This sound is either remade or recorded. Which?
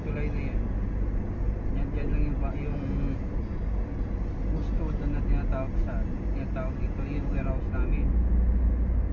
recorded